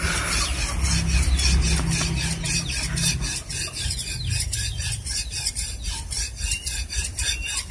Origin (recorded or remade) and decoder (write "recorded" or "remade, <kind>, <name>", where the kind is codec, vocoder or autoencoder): recorded